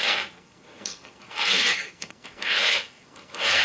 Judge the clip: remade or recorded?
remade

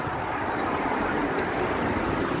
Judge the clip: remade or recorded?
recorded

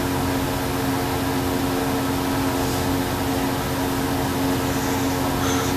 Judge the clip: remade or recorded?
recorded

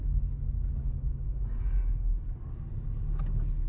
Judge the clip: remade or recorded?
recorded